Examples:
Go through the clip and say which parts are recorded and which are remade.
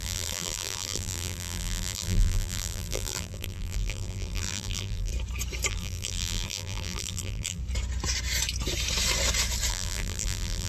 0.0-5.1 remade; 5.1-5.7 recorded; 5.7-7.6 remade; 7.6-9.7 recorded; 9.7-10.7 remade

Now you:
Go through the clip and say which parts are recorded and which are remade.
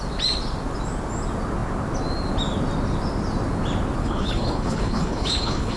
0.0-4.0 recorded; 4.0-5.8 remade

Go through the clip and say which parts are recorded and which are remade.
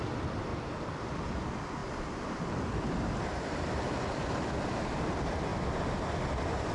0.0-6.7 recorded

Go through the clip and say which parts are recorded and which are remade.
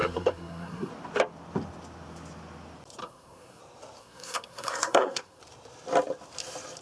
0.0-0.9 remade; 0.9-3.0 recorded; 3.0-3.6 remade; 3.6-4.0 recorded; 4.0-5.4 remade; 5.4-6.8 recorded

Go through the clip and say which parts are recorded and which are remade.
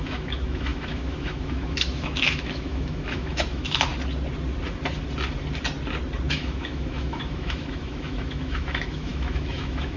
0.0-3.9 remade; 3.9-6.3 recorded; 6.3-10.0 remade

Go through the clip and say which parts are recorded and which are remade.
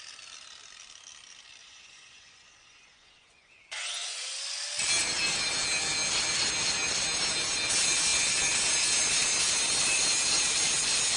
0.0-1.6 recorded; 1.6-4.4 remade; 4.4-11.2 recorded